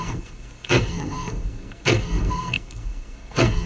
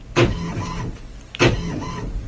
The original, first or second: second